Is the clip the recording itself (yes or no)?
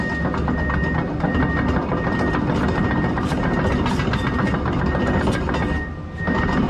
yes